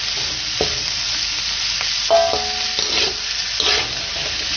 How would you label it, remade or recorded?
recorded